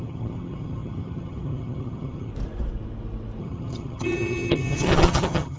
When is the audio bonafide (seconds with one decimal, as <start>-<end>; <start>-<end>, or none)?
2.3-3.4